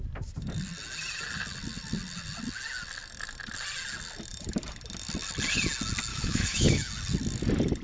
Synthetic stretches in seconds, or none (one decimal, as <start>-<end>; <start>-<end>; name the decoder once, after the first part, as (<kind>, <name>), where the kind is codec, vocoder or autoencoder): 6.1-6.9 (autoencoder, DAC-VAE)